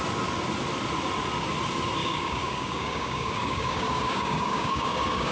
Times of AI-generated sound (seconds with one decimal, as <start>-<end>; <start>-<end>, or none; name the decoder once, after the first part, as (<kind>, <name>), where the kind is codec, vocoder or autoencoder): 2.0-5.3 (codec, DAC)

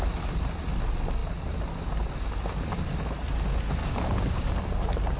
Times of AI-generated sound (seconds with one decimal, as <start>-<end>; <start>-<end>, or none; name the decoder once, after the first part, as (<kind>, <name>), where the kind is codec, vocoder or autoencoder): 3.8-4.6 (codec, DAC)

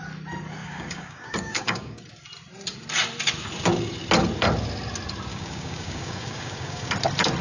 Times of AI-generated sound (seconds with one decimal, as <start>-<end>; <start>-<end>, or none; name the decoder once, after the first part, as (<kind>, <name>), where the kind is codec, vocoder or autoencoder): 0.6-2.0 (codec, DAC); 5.3-6.9

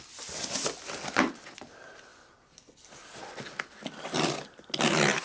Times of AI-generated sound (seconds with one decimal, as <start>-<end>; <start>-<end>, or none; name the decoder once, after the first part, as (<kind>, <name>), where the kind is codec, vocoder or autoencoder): none